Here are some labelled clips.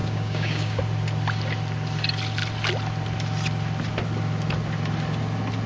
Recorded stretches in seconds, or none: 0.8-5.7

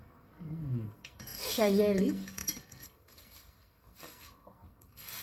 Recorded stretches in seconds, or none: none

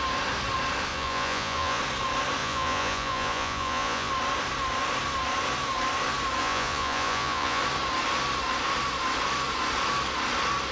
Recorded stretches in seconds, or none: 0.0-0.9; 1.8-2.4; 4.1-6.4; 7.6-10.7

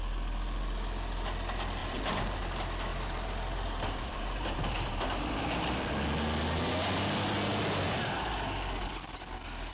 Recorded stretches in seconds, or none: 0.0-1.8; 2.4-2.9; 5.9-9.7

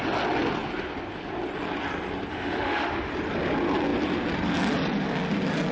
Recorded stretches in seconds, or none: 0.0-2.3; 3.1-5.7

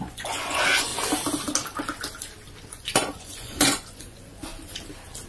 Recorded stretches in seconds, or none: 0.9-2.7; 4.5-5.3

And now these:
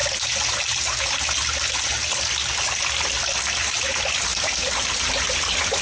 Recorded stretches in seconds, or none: 0.0-5.8

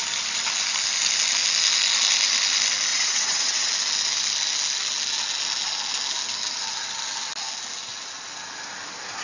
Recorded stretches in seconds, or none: 0.0-2.9; 3.7-9.2